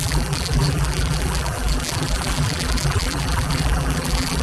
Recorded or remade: remade